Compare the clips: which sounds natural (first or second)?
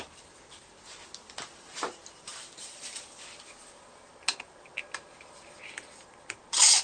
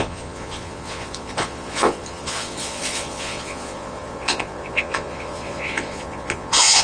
first